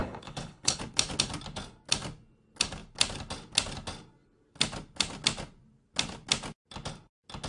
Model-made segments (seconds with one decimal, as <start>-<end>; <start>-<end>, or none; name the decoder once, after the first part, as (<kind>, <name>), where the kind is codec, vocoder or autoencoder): 0.0-0.8 (codec, HILCodec)